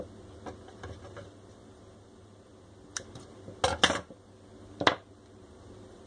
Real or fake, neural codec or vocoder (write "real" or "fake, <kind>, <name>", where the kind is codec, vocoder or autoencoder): real